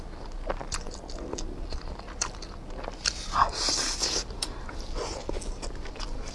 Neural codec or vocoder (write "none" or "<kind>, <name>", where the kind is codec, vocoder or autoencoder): none